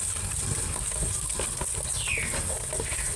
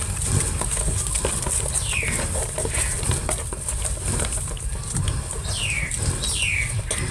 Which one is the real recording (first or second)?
first